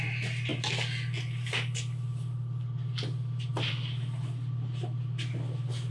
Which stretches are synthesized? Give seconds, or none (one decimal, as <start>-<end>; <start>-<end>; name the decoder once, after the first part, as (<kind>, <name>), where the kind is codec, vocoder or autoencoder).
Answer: none